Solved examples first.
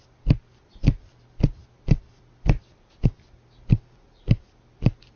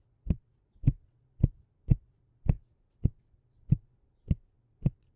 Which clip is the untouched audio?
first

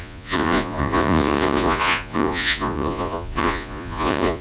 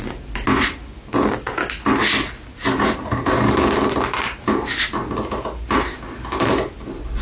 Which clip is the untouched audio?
second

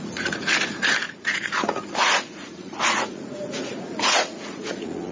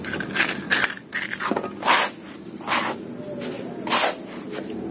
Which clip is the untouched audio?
second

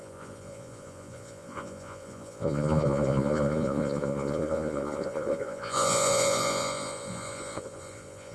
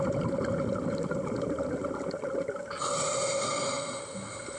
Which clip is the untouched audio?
second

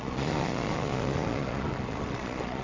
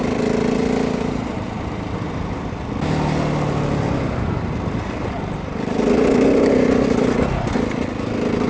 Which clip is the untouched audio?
second